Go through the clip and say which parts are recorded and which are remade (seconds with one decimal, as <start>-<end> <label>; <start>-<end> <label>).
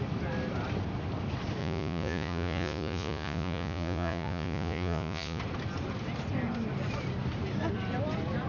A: 0.0-1.6 recorded; 1.6-5.4 remade; 5.4-8.5 recorded